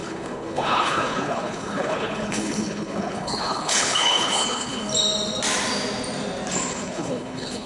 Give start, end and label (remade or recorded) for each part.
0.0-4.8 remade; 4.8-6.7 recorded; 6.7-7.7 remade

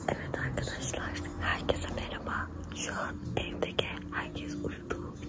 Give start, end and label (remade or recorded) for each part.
0.0-5.3 recorded

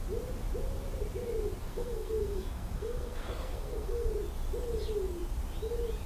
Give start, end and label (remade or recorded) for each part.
0.0-1.6 recorded; 1.6-4.1 remade; 4.1-6.1 recorded